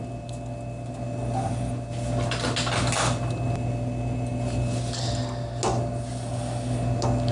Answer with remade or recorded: recorded